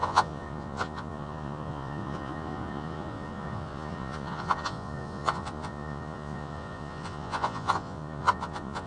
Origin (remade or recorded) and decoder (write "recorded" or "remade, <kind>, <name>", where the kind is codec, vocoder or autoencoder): remade, vocoder, Vocos